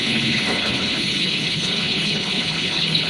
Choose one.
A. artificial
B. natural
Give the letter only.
A